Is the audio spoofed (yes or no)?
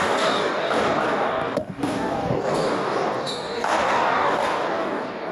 yes